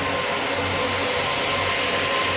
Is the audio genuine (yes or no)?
yes